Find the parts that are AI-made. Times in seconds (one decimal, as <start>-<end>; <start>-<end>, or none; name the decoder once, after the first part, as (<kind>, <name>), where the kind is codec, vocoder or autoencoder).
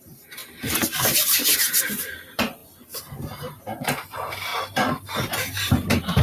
0.0-0.4 (vocoder, BigVGAN v2); 1.1-4.5; 5.1-6.2